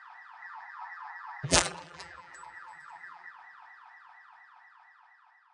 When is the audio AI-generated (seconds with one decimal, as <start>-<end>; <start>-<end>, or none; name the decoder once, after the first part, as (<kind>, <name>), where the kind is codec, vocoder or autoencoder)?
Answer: 0.4-3.3 (vocoder, BigVGAN v2)